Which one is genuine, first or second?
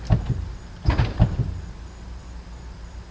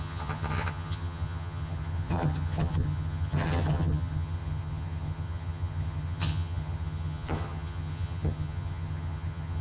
first